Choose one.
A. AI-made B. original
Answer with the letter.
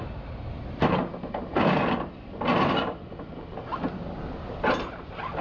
B